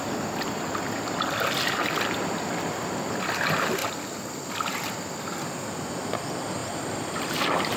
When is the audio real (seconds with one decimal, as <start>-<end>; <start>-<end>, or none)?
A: 0.0-6.6; 7.2-7.8